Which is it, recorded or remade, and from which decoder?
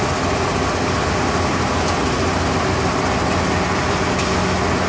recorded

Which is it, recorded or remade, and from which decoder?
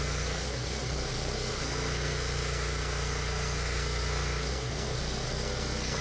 remade, codec, SNAC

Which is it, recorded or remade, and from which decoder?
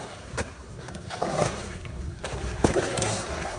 remade, codec, SNAC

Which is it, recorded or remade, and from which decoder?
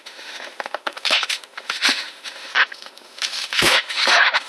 remade, autoencoder, DAC-VAE